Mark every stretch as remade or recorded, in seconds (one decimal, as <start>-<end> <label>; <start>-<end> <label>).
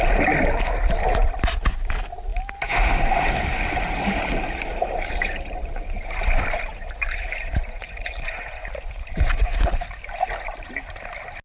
0.0-2.3 recorded; 2.3-3.3 remade; 3.3-4.7 recorded; 4.7-9.4 remade; 9.4-11.4 recorded